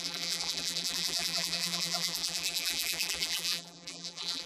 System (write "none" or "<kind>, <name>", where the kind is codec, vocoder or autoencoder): vocoder, BigVGAN v2